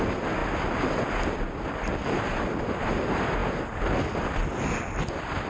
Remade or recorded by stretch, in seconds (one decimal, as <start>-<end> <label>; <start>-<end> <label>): 0.0-5.5 recorded